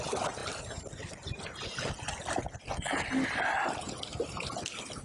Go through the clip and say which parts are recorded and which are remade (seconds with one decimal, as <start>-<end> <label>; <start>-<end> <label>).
0.0-5.0 recorded